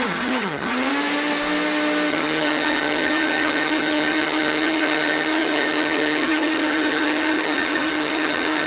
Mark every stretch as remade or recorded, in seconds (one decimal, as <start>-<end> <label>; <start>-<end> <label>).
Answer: 0.0-0.9 remade; 0.9-2.1 recorded; 2.1-8.7 remade